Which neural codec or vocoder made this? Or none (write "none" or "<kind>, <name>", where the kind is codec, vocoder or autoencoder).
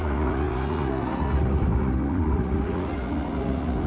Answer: vocoder, Vocos